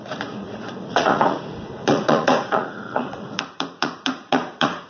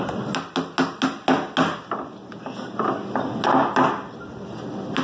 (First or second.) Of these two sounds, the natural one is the second